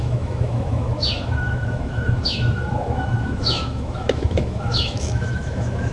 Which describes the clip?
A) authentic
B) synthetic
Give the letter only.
B